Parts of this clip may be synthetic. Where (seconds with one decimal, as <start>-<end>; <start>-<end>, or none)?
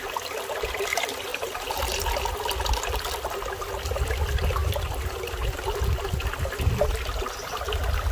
1.3-1.8